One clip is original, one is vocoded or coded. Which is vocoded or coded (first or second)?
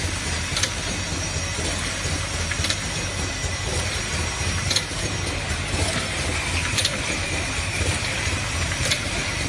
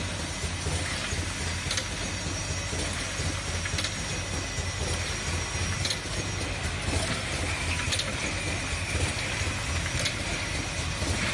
first